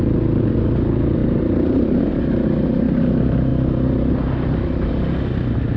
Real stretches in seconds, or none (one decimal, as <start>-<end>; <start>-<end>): 0.0-1.2; 2.5-5.8